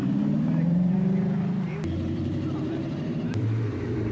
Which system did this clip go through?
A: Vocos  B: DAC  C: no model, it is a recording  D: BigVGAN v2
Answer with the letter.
D